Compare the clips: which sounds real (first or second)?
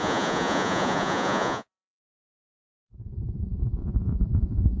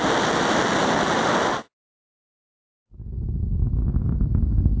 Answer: second